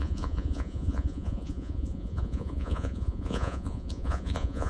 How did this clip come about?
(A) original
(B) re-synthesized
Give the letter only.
B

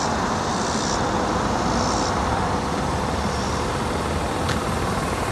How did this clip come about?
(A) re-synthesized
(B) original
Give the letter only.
B